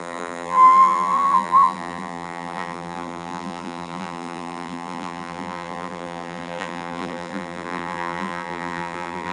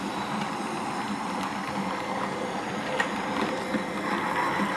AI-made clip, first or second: first